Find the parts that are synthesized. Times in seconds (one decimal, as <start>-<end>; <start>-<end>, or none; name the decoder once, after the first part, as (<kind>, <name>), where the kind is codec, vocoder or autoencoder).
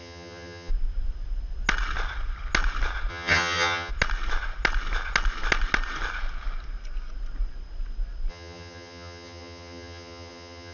0.0-0.7 (vocoder, HiFi-GAN); 3.1-3.9; 8.3-10.7